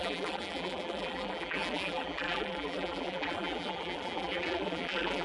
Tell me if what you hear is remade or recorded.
remade